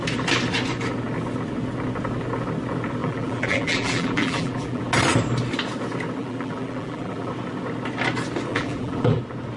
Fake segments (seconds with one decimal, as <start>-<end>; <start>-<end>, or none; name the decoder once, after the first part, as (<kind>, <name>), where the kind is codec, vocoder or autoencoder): 3.0-4.8 (vocoder, BigVGAN v2); 6.2-7.3; 8.5-9.2